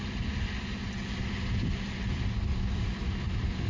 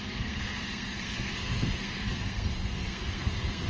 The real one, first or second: first